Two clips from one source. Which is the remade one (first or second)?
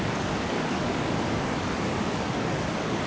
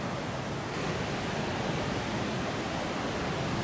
first